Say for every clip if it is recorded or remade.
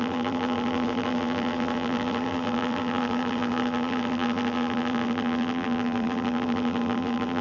remade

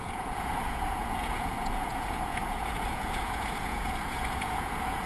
remade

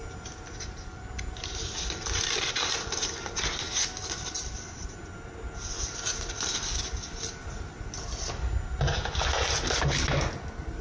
recorded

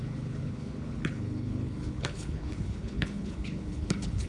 remade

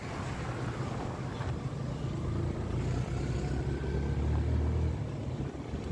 recorded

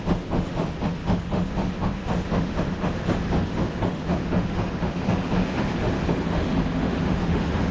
remade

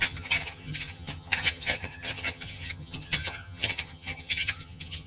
remade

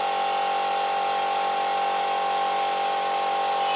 recorded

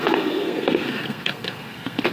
remade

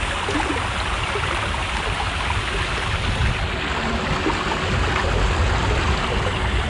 recorded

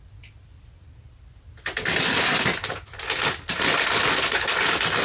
recorded